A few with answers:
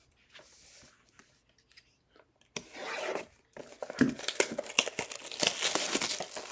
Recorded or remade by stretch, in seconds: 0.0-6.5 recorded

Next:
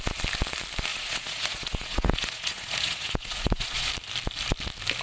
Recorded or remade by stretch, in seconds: 0.0-0.9 recorded; 0.9-3.9 remade; 3.9-5.0 recorded

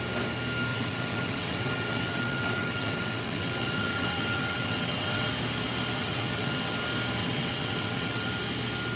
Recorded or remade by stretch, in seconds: 0.0-0.7 recorded; 0.7-5.3 remade; 5.3-6.0 recorded; 6.0-6.8 remade; 6.8-7.2 recorded; 7.2-8.3 remade; 8.3-9.0 recorded

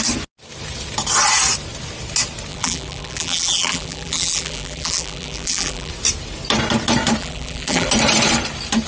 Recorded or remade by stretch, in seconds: 0.0-2.5 recorded; 2.5-5.9 remade; 5.9-7.2 recorded; 7.2-7.9 remade; 7.9-8.9 recorded

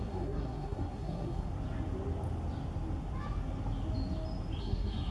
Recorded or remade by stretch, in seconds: 0.0-1.5 remade; 1.5-4.6 recorded; 4.6-5.1 remade

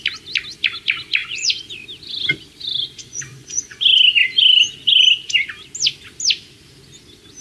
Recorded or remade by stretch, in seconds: 0.0-1.2 recorded; 1.2-1.7 remade; 1.7-3.0 recorded; 3.0-3.8 remade; 3.8-7.4 recorded

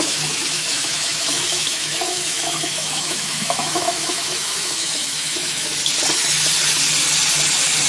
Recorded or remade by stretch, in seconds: 0.0-5.7 remade; 5.7-7.9 recorded

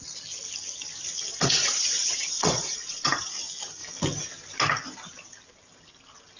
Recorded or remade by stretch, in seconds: 0.0-1.3 recorded; 1.3-3.3 remade; 3.3-6.4 recorded